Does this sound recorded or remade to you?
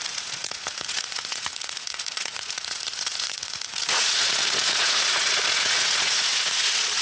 remade